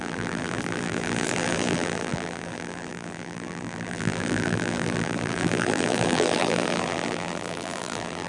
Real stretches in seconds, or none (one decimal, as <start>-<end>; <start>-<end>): none